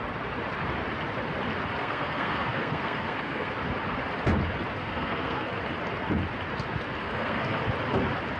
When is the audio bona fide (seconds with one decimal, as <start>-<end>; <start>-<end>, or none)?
0.0-1.8; 3.5-4.8; 5.6-7.0; 7.6-8.4